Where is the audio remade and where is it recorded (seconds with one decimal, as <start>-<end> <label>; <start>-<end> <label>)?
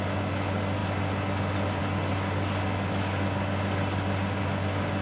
0.0-5.0 recorded